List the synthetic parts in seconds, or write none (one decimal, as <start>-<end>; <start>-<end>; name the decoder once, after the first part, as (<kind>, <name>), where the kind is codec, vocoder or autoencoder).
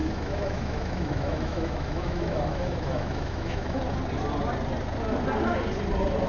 0.0-3.8 (autoencoder, DAC-VAE)